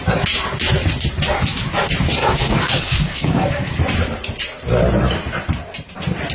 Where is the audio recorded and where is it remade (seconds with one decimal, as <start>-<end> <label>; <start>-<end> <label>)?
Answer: 0.0-2.2 recorded; 2.2-3.8 remade; 3.8-6.3 recorded